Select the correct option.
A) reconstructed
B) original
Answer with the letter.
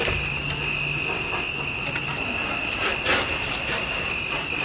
B